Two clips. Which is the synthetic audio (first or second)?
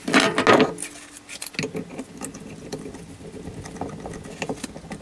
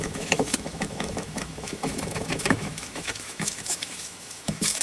second